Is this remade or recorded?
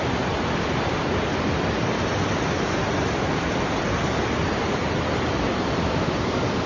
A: recorded